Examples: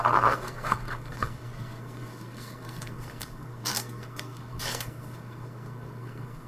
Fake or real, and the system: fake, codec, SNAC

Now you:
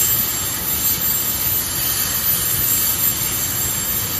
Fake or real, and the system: real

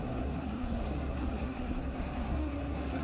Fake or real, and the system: fake, codec, SNAC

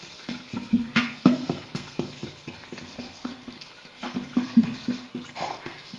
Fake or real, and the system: fake, codec, SNAC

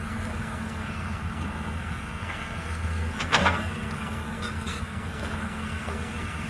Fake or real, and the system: fake, codec, SNAC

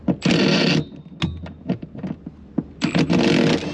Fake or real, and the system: real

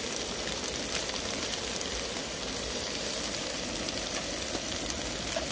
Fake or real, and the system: real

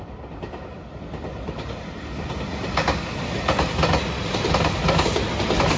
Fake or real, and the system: real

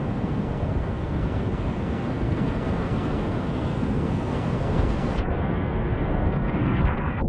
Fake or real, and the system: fake, codec, SNAC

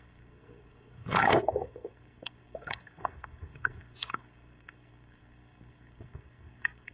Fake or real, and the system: fake, codec, SNAC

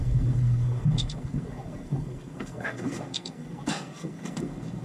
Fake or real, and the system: fake, codec, SNAC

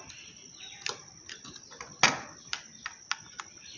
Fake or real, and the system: real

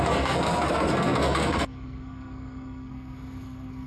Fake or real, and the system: fake, codec, SNAC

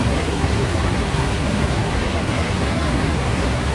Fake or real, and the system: fake, codec, SNAC